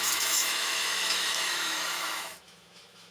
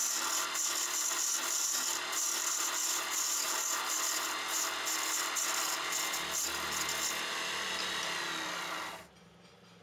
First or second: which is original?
second